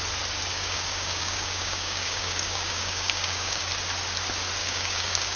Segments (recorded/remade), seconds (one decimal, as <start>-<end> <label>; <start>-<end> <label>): 0.0-0.5 recorded; 0.5-3.7 remade; 3.7-4.6 recorded; 4.6-5.4 remade